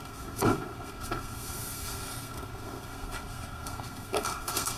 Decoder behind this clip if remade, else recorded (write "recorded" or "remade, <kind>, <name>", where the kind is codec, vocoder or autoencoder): remade, codec, SNAC